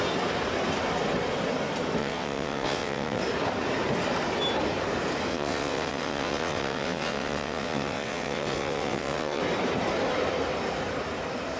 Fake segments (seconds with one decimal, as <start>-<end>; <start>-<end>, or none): 2.0-3.2; 5.3-9.4